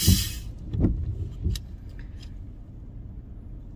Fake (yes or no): no